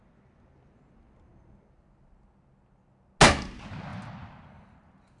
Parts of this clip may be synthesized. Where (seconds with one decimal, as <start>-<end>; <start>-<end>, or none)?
none